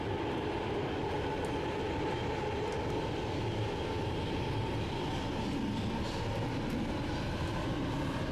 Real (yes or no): yes